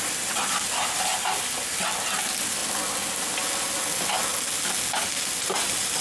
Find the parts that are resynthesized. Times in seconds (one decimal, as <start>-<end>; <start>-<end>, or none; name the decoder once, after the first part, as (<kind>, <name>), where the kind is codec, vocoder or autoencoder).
none